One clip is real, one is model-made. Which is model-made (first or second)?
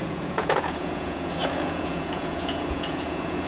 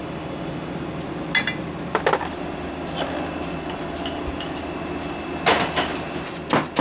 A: first